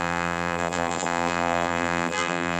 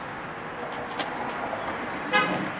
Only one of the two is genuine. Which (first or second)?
second